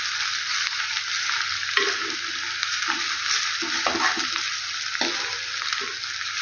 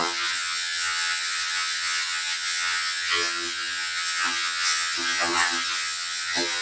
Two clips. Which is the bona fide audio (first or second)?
first